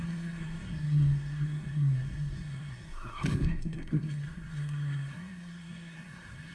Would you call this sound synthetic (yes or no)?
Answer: yes